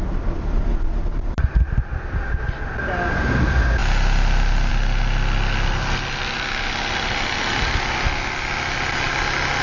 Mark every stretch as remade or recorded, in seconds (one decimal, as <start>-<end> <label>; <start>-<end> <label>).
0.0-9.6 recorded